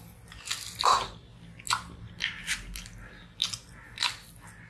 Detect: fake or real real